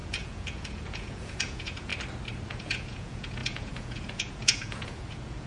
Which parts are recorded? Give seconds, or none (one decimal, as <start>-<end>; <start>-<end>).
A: 1.9-2.5